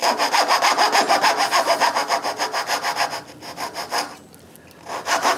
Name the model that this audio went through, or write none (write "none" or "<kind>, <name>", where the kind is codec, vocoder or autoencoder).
none